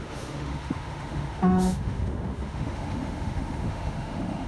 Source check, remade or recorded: remade